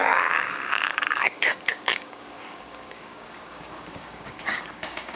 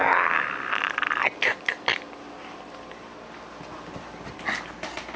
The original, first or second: second